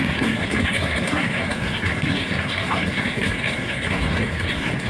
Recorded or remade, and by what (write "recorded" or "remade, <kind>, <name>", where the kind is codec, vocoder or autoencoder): remade, codec, SNAC